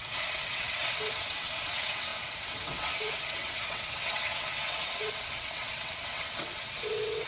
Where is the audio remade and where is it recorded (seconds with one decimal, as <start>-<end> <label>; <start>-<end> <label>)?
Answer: 0.0-7.3 remade